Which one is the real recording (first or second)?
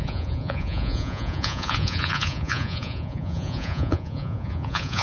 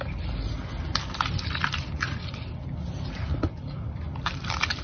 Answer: second